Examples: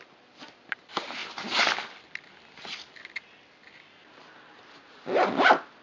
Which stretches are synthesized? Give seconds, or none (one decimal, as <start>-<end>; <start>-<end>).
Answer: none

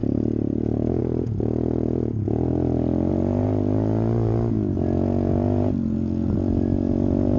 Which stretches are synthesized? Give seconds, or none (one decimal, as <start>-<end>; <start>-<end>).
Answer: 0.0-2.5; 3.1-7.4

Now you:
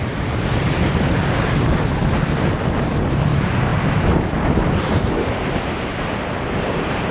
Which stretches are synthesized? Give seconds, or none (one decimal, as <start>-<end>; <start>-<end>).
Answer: none